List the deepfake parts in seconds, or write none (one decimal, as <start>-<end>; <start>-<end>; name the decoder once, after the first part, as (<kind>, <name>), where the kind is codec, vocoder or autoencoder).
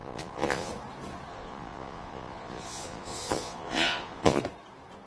0.0-0.7 (vocoder, Vocos); 1.3-4.4